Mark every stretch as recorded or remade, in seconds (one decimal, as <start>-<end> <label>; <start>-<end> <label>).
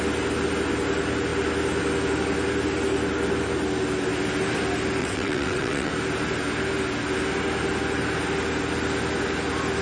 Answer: 0.0-5.0 recorded; 5.0-5.9 remade; 5.9-9.8 recorded